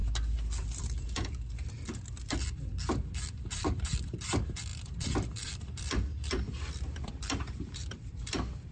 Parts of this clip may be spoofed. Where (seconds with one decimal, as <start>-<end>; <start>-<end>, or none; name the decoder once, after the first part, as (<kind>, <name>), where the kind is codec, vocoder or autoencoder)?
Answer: 0.6-8.7 (vocoder, BigVGAN v2)